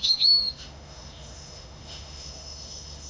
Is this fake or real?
fake